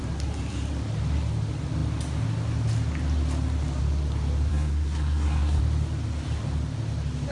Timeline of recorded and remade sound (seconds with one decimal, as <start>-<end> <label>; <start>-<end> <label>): 0.0-4.5 recorded; 4.5-5.6 remade; 5.6-7.3 recorded